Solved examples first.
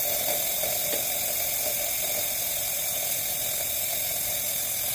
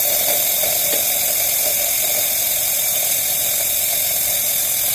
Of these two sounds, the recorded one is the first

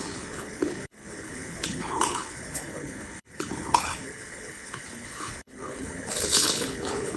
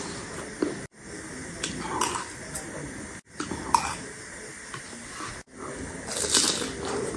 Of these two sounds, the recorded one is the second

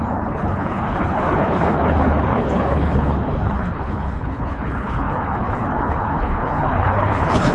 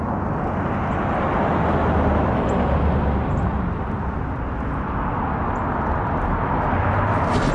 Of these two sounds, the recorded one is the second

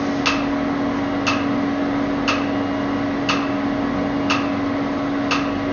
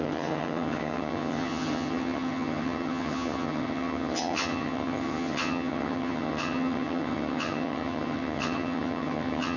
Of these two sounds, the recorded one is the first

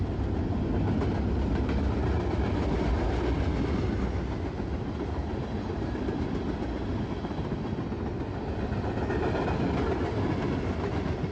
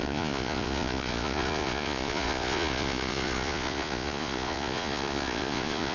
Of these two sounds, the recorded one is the first